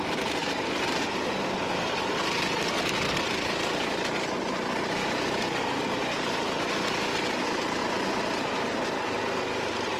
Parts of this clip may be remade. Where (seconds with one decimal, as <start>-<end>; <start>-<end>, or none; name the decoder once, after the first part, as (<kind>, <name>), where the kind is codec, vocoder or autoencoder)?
7.8-8.9 (vocoder, BigVGAN v2)